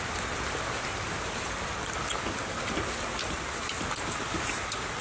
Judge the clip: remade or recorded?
recorded